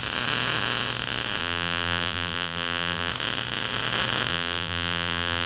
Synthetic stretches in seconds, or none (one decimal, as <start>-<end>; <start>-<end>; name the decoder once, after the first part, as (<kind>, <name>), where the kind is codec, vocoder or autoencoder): 1.4-3.1 (vocoder, BigVGAN v2); 4.3-5.5